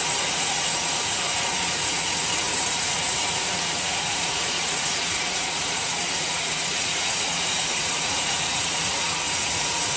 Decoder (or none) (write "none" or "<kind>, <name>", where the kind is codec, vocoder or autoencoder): vocoder, Vocos